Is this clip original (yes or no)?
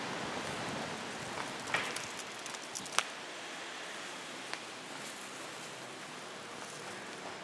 yes